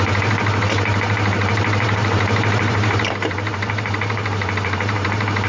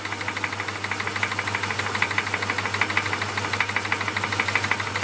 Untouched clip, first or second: second